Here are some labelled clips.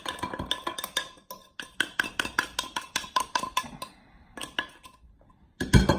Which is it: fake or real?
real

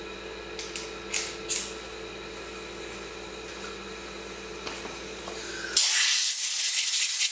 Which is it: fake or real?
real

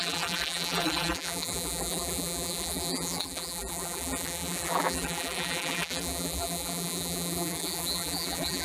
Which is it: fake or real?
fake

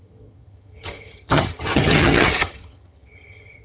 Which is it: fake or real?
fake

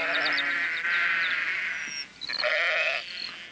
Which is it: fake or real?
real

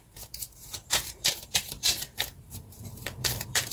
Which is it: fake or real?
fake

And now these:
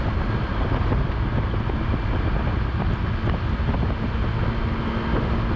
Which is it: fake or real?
real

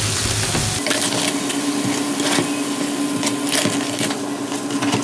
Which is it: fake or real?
real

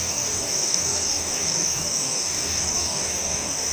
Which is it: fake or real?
fake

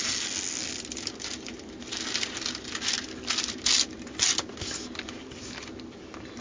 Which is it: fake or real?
real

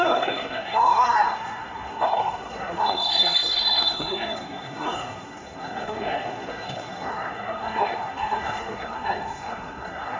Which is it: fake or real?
fake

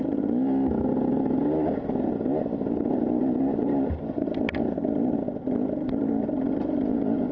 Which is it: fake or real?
real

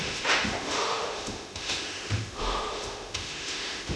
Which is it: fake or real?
fake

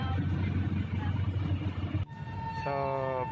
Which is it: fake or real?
real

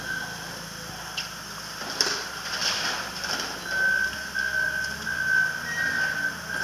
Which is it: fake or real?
real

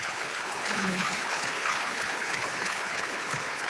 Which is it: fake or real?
fake